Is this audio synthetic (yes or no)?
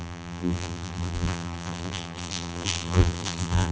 yes